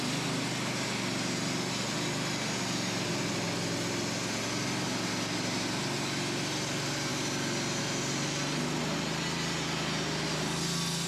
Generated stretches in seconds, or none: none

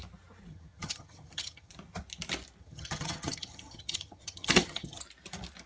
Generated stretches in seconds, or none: 0.5-1.7 (vocoder, HiFi-GAN); 2.6-5.0

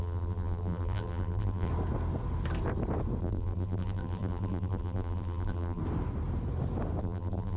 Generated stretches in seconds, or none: 0.0-1.7 (vocoder, BigVGAN v2); 3.2-5.8; 7.0-7.6

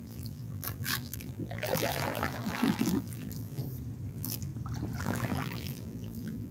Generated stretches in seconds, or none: 0.0-3.6 (vocoder, BigVGAN v2); 4.1-4.5; 5.0-6.5

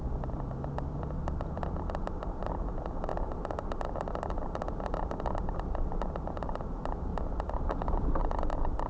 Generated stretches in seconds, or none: 0.0-3.1 (vocoder, BigVGAN v2); 3.9-7.1; 8.2-8.9

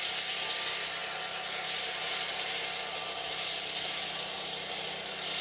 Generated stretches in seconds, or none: none